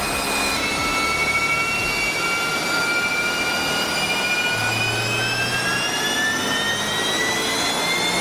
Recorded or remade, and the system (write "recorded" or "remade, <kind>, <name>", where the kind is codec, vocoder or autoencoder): recorded